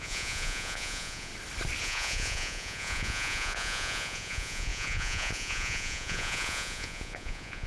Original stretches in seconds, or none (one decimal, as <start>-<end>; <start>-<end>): 1.3-1.8